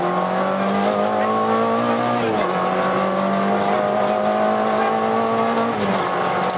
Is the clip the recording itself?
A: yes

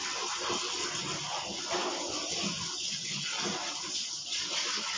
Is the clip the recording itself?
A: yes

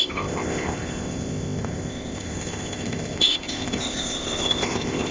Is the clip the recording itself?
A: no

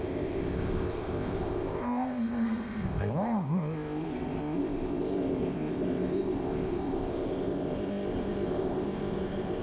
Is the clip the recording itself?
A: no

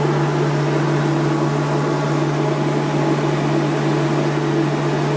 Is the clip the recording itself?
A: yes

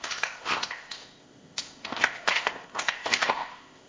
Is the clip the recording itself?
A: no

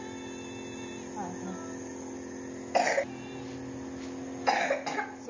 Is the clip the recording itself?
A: yes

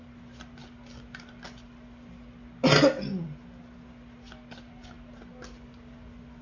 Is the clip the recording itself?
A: yes